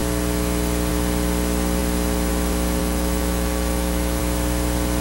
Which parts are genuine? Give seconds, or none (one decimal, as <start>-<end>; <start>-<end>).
0.0-2.8; 4.2-5.0